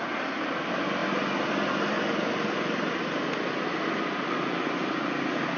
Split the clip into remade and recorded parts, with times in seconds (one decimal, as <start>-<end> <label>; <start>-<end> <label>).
0.0-5.6 recorded

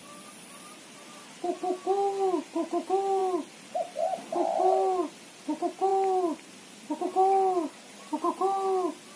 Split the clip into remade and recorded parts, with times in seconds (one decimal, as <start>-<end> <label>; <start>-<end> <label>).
0.0-9.2 recorded

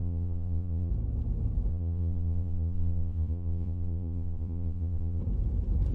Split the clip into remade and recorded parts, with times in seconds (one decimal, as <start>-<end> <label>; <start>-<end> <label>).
0.0-0.9 remade; 0.9-1.7 recorded; 1.7-5.2 remade; 5.2-5.9 recorded